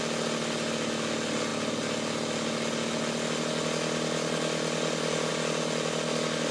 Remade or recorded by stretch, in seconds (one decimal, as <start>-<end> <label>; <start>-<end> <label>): 0.0-6.5 recorded